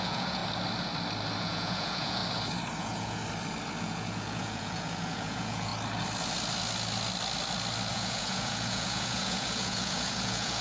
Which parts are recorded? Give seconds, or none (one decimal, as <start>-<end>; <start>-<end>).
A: 0.4-1.4; 2.2-2.8; 3.2-3.8; 5.7-7.9